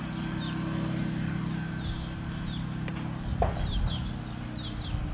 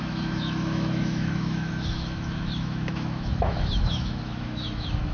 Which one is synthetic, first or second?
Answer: second